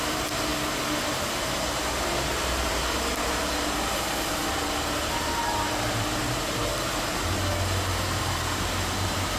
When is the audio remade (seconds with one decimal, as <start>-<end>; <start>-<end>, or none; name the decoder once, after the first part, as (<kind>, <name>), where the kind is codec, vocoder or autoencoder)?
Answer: 0.0-0.5 (vocoder, BigVGAN v2); 1.4-4.4; 5.2-6.6; 8.2-9.4